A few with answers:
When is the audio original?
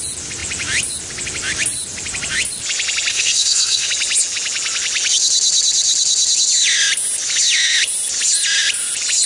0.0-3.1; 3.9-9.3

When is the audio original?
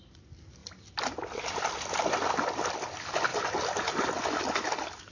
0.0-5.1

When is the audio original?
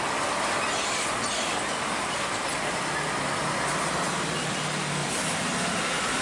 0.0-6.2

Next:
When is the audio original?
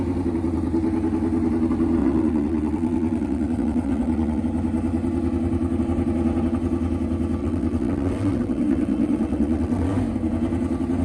0.0-2.0; 4.4-7.4; 9.9-11.0